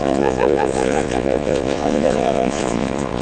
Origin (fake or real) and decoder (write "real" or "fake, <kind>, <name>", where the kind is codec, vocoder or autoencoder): fake, vocoder, Vocos